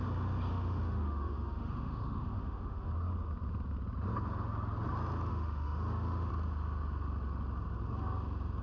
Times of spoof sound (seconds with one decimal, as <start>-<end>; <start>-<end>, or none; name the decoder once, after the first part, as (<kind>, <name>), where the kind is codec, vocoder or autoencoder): 0.5-2.9 (autoencoder, DAC-VAE); 5.3-6.3

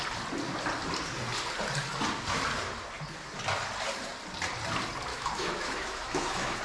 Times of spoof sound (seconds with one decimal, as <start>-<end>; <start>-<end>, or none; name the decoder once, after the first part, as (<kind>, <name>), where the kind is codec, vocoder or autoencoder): 5.1-6.6 (autoencoder, DAC-VAE)

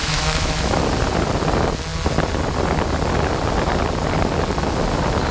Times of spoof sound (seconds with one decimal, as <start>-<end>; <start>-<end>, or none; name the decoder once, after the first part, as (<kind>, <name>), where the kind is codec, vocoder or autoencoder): 0.0-0.8 (autoencoder, DAC-VAE)

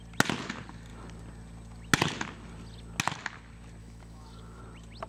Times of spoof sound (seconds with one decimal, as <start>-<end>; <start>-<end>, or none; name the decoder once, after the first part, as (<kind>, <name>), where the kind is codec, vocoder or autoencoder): 3.8-4.6 (autoencoder, DAC-VAE)

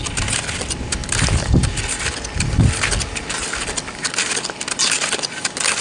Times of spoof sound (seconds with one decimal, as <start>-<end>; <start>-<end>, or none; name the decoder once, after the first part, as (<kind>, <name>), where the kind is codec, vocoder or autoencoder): none

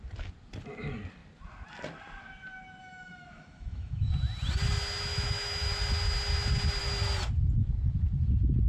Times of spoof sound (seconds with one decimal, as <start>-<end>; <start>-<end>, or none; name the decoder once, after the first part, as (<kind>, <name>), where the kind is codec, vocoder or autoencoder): 2.8-4.1 (autoencoder, DAC-VAE); 5.1-5.7